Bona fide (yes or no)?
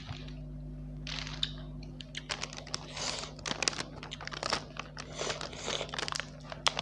yes